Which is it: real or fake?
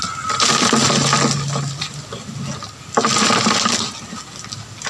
real